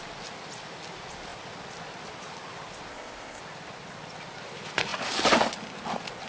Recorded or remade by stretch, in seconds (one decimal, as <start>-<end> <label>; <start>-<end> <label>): 0.0-2.9 recorded; 2.9-3.4 remade; 3.4-6.3 recorded